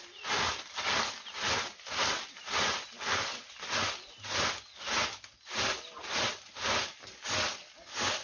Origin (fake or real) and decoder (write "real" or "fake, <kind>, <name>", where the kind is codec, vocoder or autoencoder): real